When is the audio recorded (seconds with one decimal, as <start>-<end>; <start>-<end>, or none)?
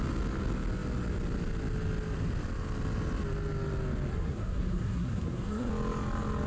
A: 0.0-4.1; 5.7-6.5